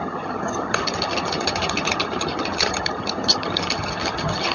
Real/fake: fake